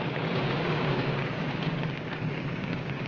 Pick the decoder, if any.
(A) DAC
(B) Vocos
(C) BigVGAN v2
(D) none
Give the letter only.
A